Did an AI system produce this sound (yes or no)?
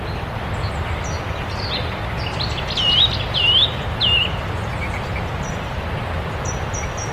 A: no